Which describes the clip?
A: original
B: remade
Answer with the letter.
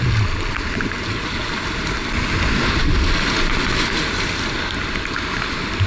A